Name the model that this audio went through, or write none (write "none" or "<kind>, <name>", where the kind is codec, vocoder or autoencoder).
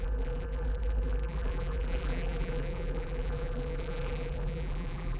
vocoder, BigVGAN v2